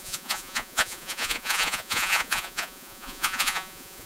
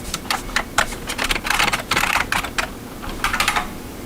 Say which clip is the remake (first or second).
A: first